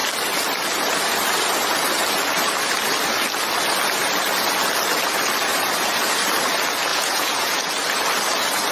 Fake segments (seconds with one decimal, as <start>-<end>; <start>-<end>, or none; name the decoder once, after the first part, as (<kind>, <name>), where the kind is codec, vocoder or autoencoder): 6.9-7.7 (vocoder, Vocos)